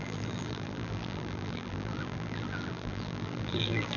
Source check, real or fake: fake